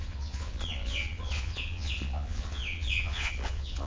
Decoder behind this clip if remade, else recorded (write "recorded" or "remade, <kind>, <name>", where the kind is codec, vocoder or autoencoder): remade, vocoder, Vocos